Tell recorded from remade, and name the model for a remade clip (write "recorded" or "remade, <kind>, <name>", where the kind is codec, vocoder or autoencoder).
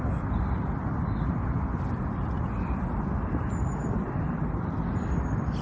recorded